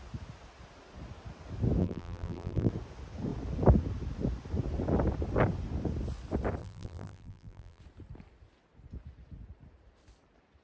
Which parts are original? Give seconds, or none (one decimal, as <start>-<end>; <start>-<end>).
0.0-1.8; 2.7-6.6; 7.8-10.6